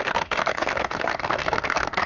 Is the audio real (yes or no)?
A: no